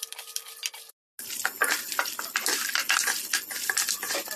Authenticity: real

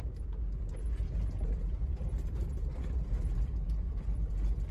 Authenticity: real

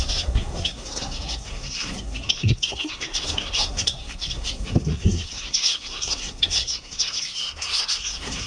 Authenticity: fake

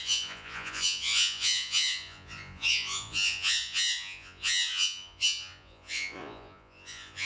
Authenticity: fake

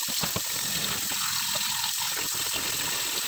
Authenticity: real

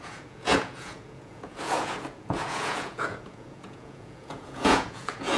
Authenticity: fake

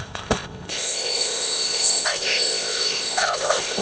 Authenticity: fake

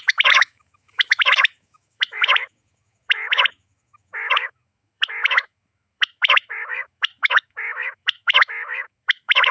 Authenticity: fake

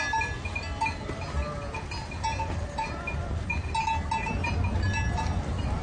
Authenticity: real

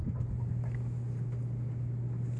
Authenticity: real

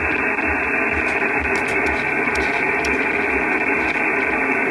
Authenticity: real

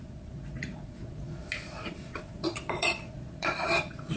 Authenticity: fake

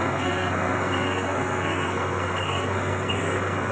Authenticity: fake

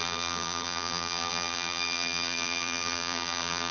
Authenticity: fake